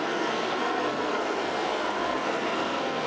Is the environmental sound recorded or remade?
remade